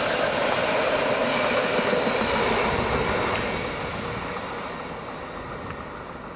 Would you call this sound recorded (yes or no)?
yes